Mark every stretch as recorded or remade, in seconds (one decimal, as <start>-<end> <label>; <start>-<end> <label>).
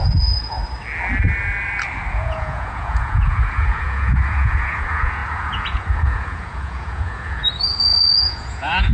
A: 0.0-0.6 remade; 0.6-2.1 recorded; 2.1-8.9 remade